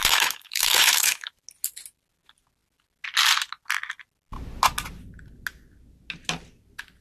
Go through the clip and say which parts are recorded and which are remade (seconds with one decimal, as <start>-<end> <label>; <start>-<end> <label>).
0.0-1.3 remade; 1.3-7.0 recorded